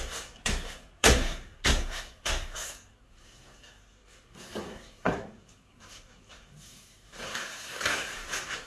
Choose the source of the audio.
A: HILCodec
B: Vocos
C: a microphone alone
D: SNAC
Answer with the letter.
D